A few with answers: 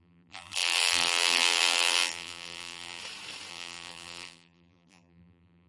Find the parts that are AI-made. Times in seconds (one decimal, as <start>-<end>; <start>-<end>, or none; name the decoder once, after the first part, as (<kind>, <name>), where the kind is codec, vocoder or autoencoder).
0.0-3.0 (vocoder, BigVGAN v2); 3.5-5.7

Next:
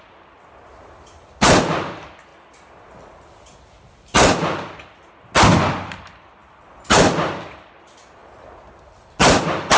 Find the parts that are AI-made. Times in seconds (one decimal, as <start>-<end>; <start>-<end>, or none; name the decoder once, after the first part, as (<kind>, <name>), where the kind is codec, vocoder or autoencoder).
none

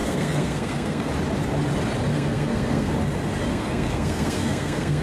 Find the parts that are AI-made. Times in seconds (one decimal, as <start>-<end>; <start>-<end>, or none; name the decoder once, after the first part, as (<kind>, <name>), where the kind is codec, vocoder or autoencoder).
0.0-1.1 (codec, SNAC); 2.1-2.9; 3.5-5.0